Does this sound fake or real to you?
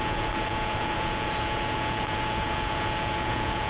fake